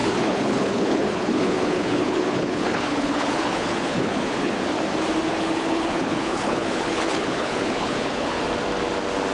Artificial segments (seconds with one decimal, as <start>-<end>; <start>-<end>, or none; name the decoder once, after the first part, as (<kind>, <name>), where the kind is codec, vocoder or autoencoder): 0.0-4.5 (codec, HILCodec); 5.3-8.4